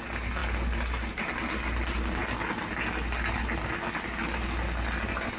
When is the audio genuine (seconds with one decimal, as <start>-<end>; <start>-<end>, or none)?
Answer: 0.0-5.4